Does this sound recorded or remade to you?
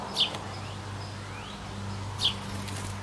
recorded